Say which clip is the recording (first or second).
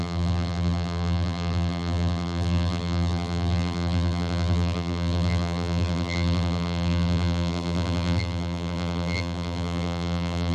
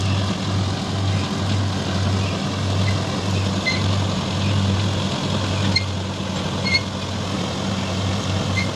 second